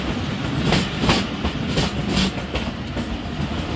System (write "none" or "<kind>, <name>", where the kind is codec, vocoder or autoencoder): none